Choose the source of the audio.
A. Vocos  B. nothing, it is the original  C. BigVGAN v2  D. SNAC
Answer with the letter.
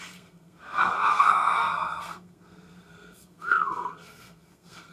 D